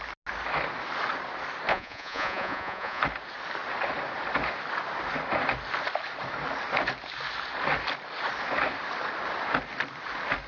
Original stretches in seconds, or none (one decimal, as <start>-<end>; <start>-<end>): 0.0-1.7; 3.0-10.5